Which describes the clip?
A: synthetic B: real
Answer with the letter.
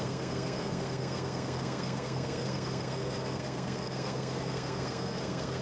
A